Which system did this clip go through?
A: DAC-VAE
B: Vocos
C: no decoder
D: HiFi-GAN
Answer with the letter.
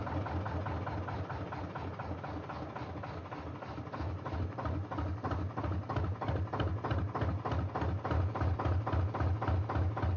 C